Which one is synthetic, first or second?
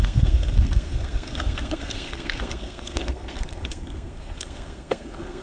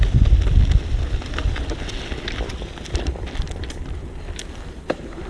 first